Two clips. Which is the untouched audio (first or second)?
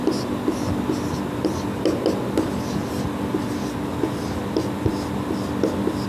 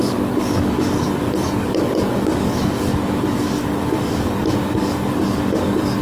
first